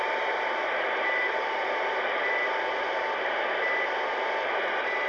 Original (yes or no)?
yes